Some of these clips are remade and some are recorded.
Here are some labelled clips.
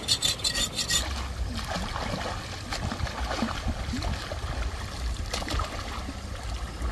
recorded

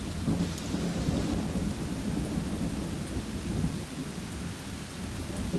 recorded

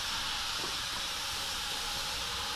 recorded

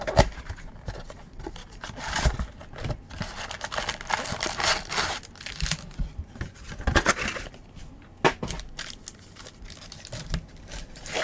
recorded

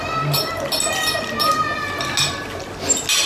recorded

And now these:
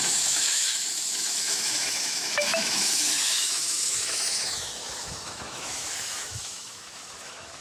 remade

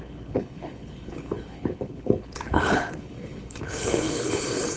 remade